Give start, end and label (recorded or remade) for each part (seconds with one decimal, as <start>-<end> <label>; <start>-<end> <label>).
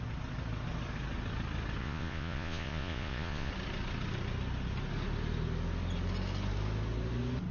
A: 0.0-1.8 recorded; 1.8-3.5 remade; 3.5-7.5 recorded